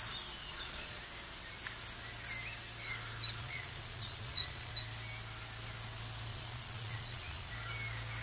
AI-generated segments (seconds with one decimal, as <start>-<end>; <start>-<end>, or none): 0.4-1.0; 3.4-4.7; 6.3-7.5

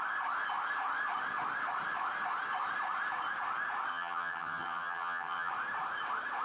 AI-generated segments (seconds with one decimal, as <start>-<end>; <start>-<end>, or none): 3.9-5.5

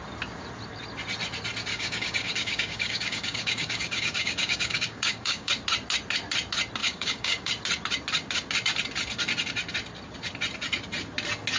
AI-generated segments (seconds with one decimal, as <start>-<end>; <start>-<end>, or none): 1.7-5.5; 6.8-7.5

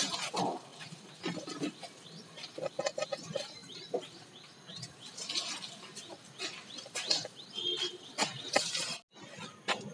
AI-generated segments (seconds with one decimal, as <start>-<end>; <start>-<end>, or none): none